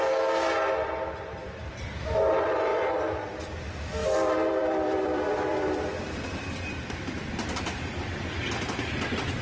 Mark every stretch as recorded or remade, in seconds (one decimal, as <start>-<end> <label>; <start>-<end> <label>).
0.0-1.4 recorded; 1.4-2.3 remade; 2.3-2.7 recorded; 2.7-3.3 remade; 3.3-4.0 recorded; 4.0-8.3 remade; 8.3-9.4 recorded